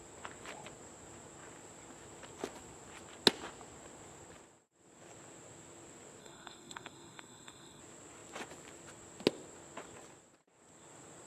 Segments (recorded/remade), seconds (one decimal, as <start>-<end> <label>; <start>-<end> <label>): 0.0-6.2 recorded; 6.2-7.8 remade; 7.8-11.3 recorded